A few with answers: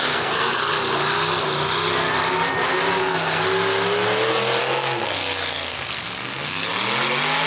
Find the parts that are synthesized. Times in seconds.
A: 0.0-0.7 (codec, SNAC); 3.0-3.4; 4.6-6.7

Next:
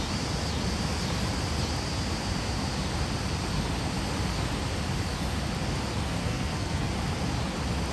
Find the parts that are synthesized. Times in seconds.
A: 6.2-6.9 (codec, SNAC)

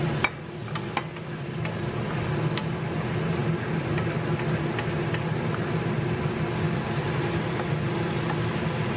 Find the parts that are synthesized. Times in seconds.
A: none